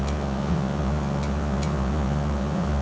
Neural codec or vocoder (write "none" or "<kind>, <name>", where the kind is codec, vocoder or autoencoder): vocoder, Vocos